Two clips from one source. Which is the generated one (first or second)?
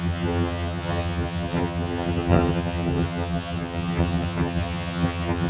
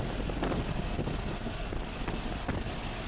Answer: first